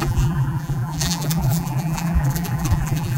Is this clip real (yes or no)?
no